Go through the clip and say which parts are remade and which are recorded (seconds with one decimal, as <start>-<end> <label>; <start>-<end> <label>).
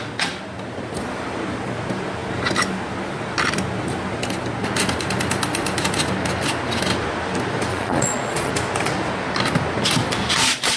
0.0-7.7 recorded; 7.7-8.5 remade; 8.5-10.8 recorded